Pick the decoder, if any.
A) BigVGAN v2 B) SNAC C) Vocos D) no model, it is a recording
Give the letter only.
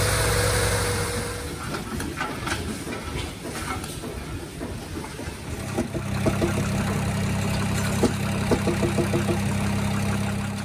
D